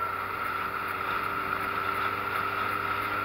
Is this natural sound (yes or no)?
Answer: yes